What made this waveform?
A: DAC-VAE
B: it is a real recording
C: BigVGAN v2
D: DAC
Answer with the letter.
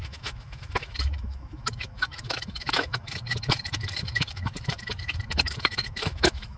A